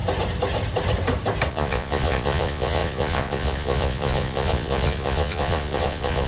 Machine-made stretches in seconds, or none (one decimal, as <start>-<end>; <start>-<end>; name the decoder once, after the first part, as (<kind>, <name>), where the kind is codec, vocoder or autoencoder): 1.5-6.3 (vocoder, Vocos)